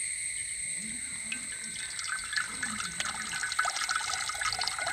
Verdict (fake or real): real